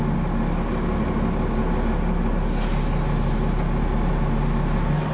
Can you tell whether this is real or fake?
real